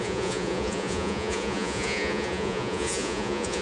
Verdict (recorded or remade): remade